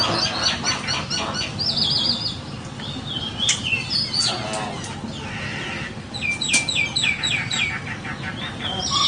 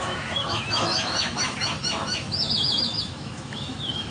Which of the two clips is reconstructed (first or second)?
second